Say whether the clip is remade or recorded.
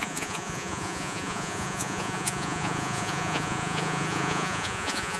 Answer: remade